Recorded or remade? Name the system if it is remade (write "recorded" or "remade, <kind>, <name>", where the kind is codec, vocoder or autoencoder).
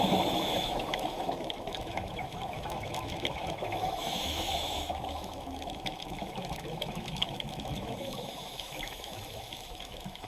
remade, autoencoder, DAC-VAE